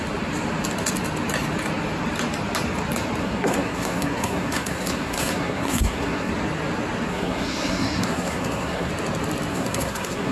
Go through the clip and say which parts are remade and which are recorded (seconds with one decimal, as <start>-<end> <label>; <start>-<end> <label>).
0.0-3.2 recorded; 3.2-6.3 remade; 6.3-7.1 recorded; 7.1-8.9 remade; 8.9-9.5 recorded; 9.5-10.3 remade